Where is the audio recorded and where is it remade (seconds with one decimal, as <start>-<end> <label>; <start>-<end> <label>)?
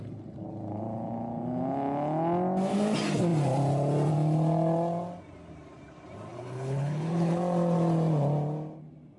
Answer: 0.0-6.3 recorded; 6.3-7.4 remade; 7.4-9.2 recorded